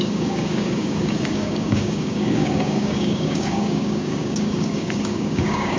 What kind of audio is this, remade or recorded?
remade